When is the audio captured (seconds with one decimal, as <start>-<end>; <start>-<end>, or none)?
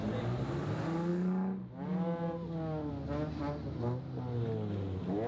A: 0.0-5.3